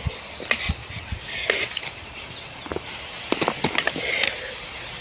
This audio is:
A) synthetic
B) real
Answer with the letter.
B